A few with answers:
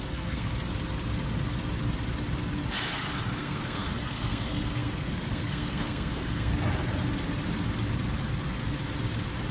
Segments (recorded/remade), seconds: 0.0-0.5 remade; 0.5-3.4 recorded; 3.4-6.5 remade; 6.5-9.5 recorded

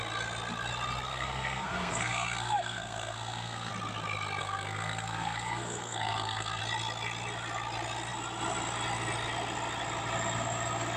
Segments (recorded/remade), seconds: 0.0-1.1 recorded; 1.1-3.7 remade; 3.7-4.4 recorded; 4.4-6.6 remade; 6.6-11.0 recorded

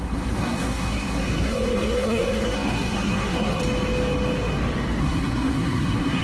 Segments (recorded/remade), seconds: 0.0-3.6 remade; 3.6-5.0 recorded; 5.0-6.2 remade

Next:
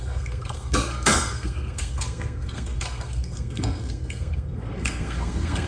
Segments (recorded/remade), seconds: 0.0-5.7 remade